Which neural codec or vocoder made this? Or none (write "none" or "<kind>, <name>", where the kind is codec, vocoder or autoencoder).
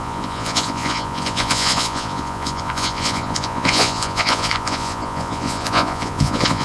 vocoder, Vocos